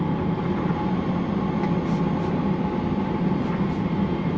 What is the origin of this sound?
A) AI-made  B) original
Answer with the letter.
B